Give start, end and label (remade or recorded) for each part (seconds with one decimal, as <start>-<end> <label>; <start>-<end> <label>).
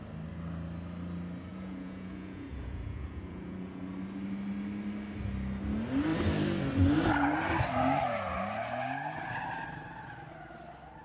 0.0-1.5 recorded; 1.5-3.8 remade; 3.8-11.0 recorded